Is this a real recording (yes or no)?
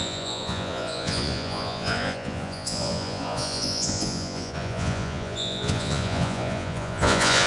no